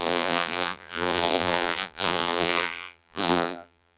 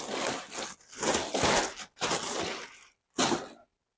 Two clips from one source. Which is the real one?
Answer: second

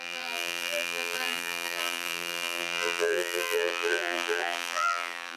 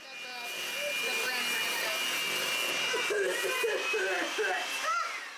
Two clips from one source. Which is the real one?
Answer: second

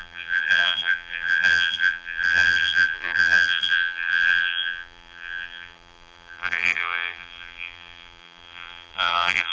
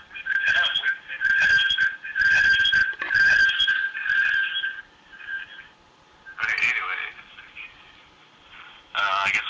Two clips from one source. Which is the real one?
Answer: second